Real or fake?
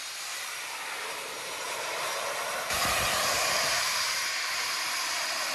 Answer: real